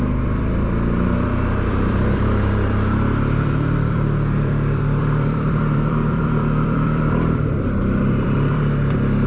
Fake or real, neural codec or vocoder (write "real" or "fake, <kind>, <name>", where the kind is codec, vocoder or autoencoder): fake, vocoder, BigVGAN v2